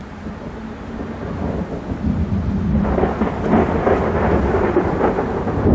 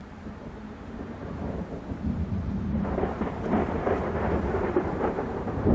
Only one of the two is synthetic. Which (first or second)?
second